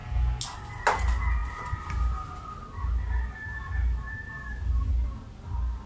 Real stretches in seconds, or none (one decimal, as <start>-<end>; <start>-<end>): 0.0-5.9